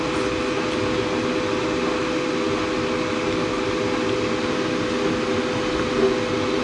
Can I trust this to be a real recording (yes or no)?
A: yes